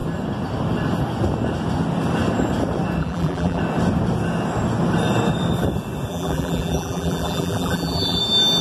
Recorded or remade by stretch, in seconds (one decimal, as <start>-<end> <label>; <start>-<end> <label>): 0.0-3.0 recorded; 3.0-3.6 remade; 3.6-6.1 recorded; 6.1-8.2 remade; 8.2-8.6 recorded